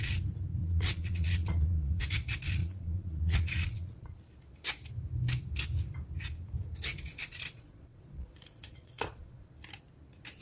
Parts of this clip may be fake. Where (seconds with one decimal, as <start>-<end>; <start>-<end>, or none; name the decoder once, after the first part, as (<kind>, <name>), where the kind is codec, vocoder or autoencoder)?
0.6-2.0 (vocoder, Vocos); 2.6-4.2; 7.2-9.5